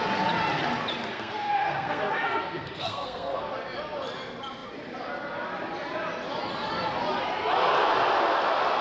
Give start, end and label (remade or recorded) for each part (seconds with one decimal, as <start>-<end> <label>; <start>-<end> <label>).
0.0-1.0 recorded; 1.0-3.5 remade; 3.5-8.8 recorded